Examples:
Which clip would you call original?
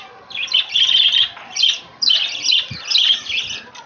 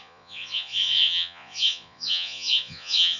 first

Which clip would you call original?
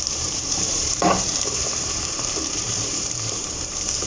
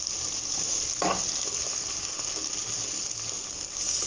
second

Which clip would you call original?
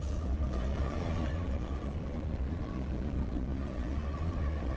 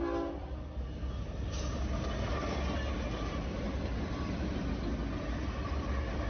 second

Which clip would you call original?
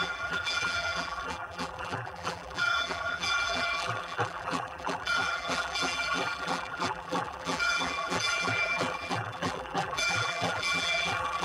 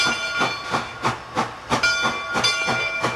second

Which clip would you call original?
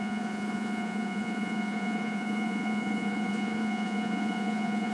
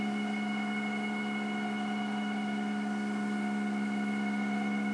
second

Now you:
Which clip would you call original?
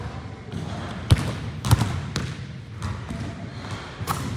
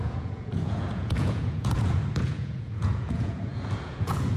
first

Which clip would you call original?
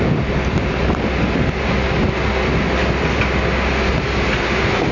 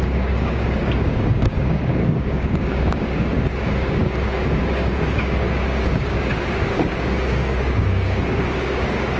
first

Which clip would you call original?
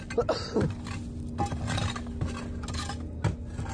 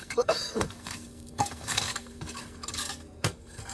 first